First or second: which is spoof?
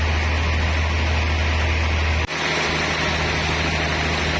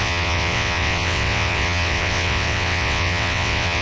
second